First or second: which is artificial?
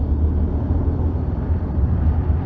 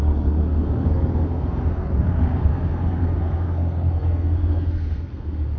second